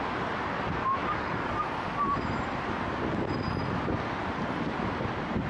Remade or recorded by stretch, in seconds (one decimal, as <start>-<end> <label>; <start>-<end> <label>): 0.0-1.0 recorded; 1.0-1.6 remade; 1.6-5.5 recorded